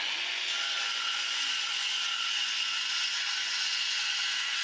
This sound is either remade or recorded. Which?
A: remade